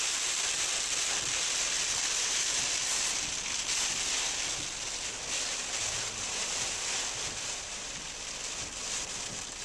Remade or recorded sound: remade